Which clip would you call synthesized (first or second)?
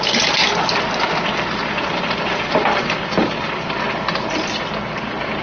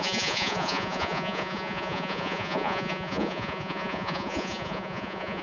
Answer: second